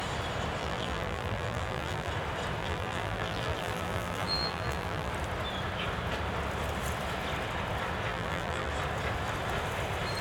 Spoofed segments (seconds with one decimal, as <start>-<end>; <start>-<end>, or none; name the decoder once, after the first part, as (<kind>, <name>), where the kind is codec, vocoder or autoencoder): 0.6-2.1 (vocoder, BigVGAN v2); 2.6-5.1; 8.1-8.7